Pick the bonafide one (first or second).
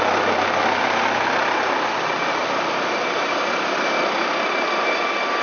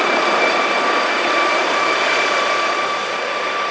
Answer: first